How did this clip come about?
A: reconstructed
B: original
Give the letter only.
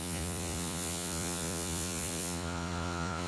A